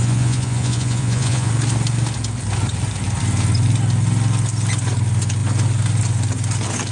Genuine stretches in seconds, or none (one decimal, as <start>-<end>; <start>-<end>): 1.5-6.9